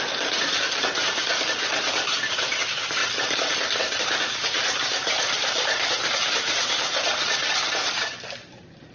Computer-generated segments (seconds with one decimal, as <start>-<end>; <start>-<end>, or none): 3.0-8.2